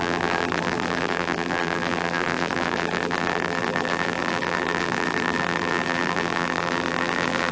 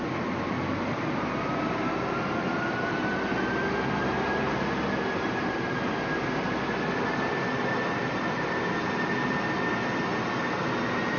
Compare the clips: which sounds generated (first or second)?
first